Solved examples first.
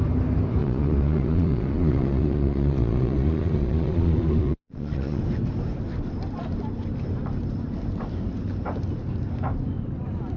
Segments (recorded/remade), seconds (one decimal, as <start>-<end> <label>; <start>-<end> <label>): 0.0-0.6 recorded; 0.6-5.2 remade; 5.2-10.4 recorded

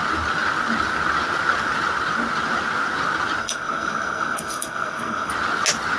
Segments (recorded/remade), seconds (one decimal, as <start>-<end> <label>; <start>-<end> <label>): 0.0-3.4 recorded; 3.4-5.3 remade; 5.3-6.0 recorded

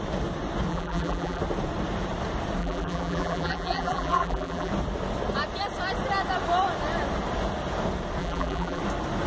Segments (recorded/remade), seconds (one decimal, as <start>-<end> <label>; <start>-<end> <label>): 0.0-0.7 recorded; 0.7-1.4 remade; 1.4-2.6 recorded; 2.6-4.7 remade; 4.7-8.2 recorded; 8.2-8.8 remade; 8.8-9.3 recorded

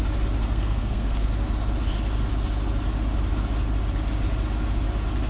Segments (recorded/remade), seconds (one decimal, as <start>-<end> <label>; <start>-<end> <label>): 0.0-0.4 recorded; 0.4-1.3 remade; 1.3-5.3 recorded

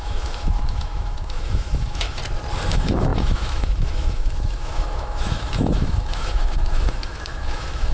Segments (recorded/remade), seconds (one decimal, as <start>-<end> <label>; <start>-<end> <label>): 0.0-2.2 remade; 2.2-2.7 recorded; 2.7-7.9 remade

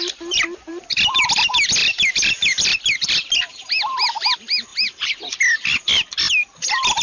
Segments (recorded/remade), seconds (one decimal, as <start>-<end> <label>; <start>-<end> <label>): 0.0-1.8 recorded; 1.8-3.5 remade; 3.5-4.7 recorded; 4.7-6.3 remade; 6.3-7.0 recorded

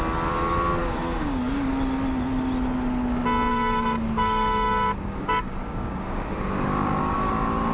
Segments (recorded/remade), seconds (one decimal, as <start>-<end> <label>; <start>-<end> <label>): 0.0-0.8 recorded; 0.8-1.7 remade; 1.7-3.5 recorded; 3.5-7.3 remade; 7.3-7.7 recorded